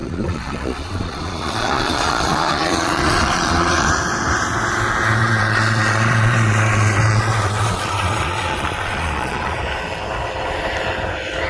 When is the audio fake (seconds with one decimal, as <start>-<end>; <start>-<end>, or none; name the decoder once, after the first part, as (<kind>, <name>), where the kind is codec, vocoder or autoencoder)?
0.0-4.0 (vocoder, Vocos); 5.2-9.6